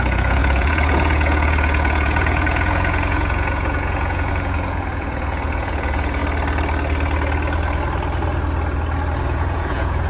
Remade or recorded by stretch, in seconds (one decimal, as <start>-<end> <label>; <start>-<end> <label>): 0.0-6.2 remade; 6.2-9.2 recorded; 9.2-10.1 remade